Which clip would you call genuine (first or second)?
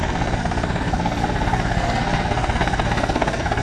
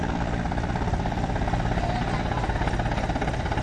second